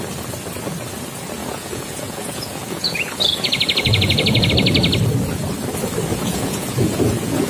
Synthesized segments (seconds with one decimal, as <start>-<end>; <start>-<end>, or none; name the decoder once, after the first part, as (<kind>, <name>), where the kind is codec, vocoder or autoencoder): 1.4-4.5 (vocoder, Vocos); 6.1-7.5